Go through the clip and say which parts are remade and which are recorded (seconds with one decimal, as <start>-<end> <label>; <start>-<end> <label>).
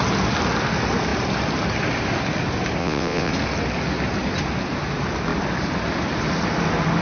0.0-2.8 recorded; 2.8-3.3 remade; 3.3-7.0 recorded